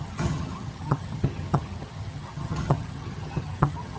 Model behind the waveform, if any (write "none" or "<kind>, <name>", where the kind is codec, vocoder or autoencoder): vocoder, HiFi-GAN